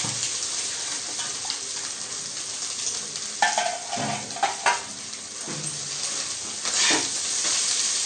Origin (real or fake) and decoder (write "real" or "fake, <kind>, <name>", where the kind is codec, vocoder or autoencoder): real